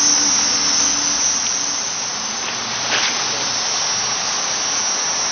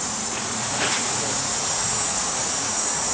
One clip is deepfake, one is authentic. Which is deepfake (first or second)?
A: second